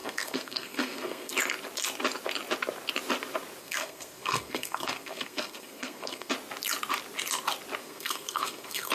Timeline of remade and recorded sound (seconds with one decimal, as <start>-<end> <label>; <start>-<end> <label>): 0.0-1.3 remade; 1.3-3.6 recorded; 3.6-6.3 remade; 6.3-7.8 recorded; 7.8-8.9 remade